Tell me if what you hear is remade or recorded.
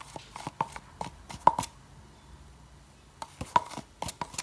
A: recorded